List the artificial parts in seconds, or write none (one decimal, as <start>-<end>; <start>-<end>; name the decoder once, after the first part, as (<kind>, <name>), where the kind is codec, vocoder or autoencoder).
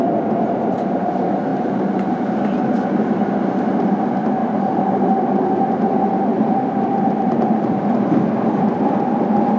1.5-3.1 (vocoder, BigVGAN v2); 4.4-5.2; 6.3-7.8